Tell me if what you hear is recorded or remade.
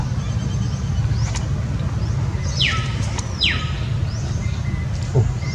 recorded